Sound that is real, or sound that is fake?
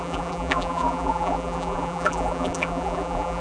fake